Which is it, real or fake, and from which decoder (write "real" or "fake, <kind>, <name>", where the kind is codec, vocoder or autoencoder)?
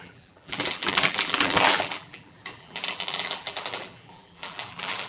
fake, vocoder, BigVGAN v2